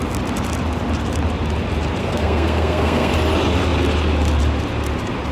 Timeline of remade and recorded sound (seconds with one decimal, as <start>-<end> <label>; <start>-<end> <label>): 0.0-2.0 recorded; 2.0-3.1 remade; 3.1-5.3 recorded